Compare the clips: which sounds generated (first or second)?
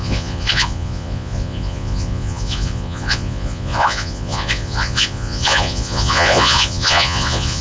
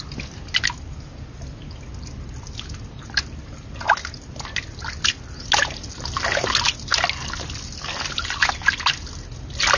first